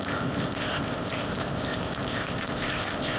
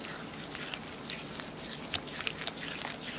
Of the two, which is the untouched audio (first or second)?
second